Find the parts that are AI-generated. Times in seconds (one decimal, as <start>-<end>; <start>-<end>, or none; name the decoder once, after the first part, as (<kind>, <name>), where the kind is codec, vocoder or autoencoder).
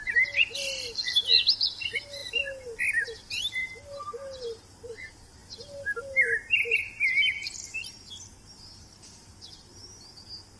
none